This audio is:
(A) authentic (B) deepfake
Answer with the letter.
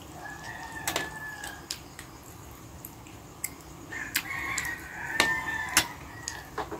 A